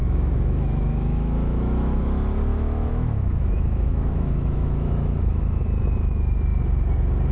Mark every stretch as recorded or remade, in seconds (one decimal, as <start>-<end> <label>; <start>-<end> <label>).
0.0-2.0 remade; 2.0-2.5 recorded; 2.5-5.6 remade; 5.6-7.3 recorded